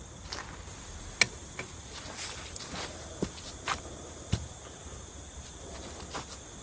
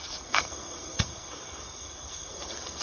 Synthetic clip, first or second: second